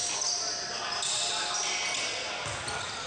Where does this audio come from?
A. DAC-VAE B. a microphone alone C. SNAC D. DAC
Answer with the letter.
B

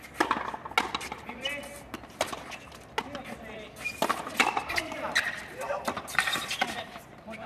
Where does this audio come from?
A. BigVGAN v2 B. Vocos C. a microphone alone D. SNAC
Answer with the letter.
C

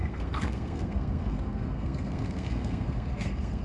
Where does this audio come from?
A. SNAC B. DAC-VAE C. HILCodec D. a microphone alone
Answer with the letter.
A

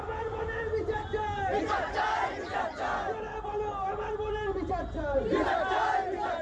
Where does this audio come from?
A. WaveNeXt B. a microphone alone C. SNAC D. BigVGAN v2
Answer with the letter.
B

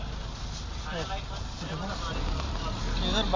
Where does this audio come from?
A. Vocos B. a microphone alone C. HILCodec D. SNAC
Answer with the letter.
B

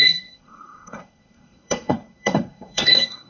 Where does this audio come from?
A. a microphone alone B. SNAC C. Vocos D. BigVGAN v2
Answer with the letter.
B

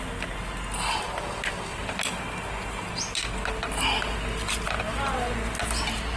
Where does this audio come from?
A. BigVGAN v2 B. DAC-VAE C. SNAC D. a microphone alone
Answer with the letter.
D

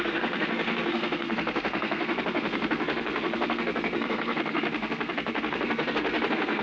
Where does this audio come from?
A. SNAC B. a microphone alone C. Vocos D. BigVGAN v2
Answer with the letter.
A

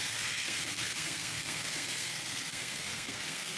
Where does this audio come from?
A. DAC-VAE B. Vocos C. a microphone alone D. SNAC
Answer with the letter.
D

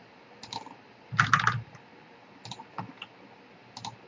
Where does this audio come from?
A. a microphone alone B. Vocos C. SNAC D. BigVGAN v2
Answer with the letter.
A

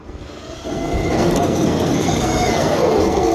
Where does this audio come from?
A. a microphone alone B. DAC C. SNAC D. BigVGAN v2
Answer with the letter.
C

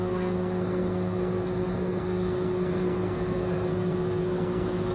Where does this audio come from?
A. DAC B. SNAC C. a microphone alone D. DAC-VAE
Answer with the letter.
B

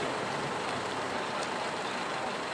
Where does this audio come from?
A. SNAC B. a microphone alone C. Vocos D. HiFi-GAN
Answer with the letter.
B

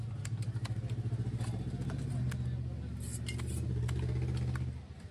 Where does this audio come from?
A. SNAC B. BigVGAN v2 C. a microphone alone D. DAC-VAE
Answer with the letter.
C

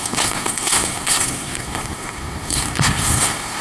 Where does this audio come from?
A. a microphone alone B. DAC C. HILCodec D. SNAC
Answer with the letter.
D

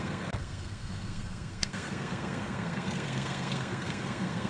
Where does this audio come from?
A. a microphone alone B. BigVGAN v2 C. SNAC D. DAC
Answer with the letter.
C